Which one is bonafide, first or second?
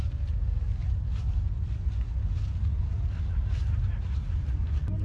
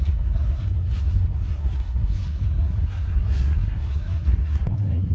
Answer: first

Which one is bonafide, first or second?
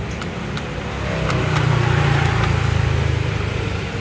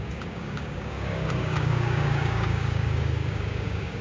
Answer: first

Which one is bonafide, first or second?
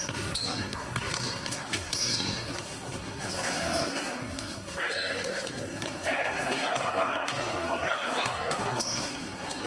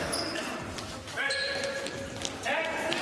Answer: second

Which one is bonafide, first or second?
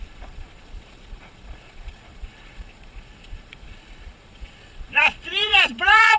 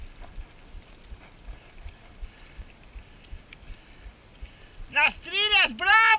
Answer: second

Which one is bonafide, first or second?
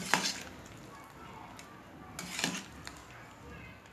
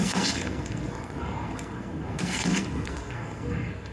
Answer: first